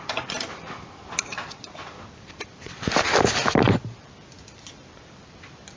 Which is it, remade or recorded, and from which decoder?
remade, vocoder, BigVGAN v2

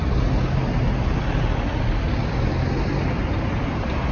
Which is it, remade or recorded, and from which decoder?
recorded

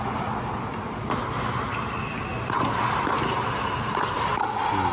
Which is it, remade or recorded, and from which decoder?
recorded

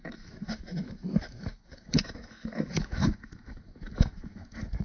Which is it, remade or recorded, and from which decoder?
remade, autoencoder, DAC-VAE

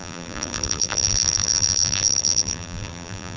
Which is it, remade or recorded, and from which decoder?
remade, vocoder, BigVGAN v2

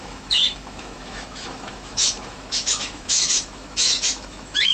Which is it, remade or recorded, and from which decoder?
remade, autoencoder, DAC-VAE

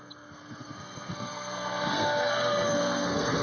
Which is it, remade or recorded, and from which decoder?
remade, codec, SNAC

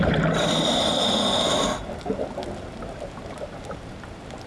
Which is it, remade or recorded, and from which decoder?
recorded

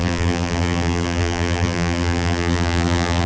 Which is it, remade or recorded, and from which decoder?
remade, vocoder, BigVGAN v2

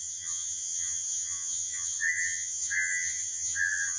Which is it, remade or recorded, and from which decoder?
remade, vocoder, HiFi-GAN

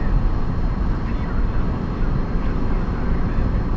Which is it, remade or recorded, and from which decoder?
recorded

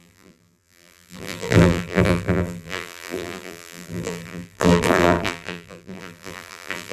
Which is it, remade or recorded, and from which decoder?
remade, vocoder, BigVGAN v2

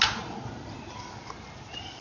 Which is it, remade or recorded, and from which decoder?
recorded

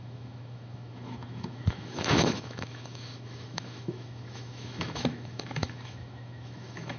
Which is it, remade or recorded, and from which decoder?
remade, autoencoder, DAC-VAE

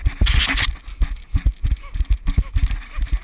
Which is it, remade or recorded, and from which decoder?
recorded